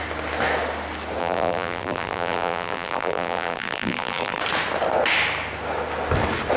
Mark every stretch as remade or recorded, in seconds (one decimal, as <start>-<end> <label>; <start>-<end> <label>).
0.0-1.2 recorded; 1.2-4.4 remade; 4.4-6.6 recorded